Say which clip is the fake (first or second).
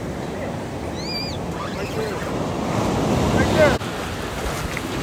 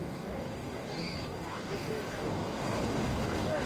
second